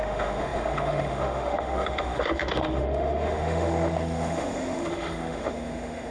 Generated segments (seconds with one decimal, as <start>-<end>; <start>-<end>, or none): 0.0-6.1